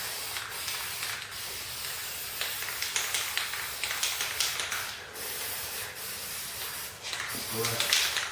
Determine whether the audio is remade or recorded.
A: recorded